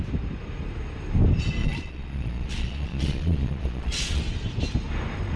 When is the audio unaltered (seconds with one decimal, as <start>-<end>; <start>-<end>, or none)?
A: 0.0-1.6; 4.2-5.4